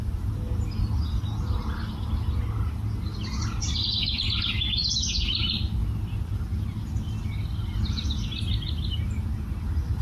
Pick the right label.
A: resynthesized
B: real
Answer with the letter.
B